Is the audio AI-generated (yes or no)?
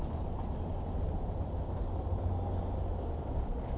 no